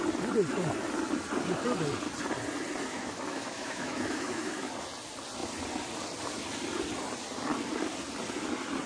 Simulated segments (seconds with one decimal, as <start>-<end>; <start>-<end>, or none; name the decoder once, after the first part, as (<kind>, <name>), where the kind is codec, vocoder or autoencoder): 2.9-4.7 (autoencoder, DAC-VAE)